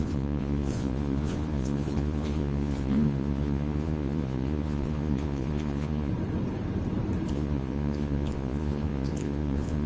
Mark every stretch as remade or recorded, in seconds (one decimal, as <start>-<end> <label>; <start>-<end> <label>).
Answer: 0.0-6.1 remade; 6.1-7.3 recorded; 7.3-9.9 remade